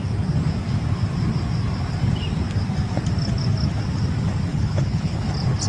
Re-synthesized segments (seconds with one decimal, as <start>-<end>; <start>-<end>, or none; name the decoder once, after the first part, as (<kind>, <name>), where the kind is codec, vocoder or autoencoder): 4.5-5.3 (codec, HILCodec)